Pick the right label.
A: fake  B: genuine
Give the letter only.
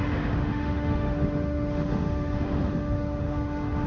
A